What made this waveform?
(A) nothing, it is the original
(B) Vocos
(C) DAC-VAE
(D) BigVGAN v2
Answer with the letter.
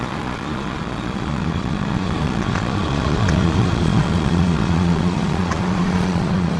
B